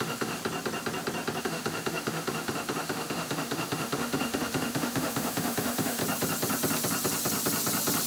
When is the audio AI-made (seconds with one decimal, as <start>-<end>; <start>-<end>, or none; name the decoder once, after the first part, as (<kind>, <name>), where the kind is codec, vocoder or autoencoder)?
0.0-0.4 (autoencoder, DAC-VAE); 1.4-6.0